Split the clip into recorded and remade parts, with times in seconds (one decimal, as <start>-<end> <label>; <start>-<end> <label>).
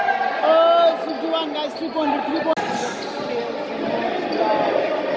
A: 0.0-5.2 recorded